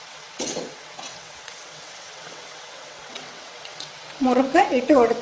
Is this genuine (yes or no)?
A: no